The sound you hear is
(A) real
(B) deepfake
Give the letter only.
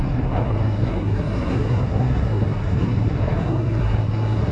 B